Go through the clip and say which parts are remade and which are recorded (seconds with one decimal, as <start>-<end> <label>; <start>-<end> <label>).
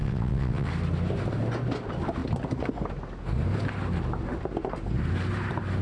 0.0-0.7 remade; 0.7-5.8 recorded